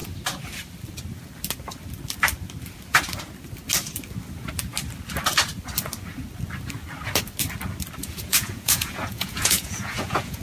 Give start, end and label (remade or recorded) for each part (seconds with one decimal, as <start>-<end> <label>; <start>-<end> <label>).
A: 0.0-8.0 recorded; 8.0-10.4 remade